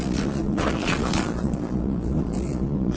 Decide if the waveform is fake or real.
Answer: fake